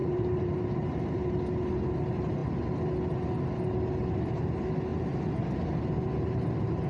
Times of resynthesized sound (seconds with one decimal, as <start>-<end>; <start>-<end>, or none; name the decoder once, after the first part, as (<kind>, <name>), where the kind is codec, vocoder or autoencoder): 0.0-1.3 (vocoder, BigVGAN v2)